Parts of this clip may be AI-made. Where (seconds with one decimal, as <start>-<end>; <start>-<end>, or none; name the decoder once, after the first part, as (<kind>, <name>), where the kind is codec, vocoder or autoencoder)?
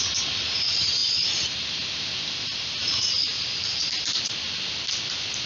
1.0-4.3 (vocoder, BigVGAN v2)